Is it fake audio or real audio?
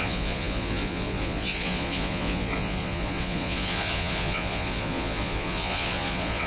fake